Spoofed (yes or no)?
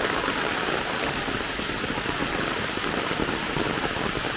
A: no